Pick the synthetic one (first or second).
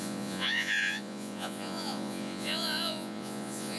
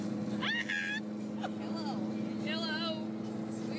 first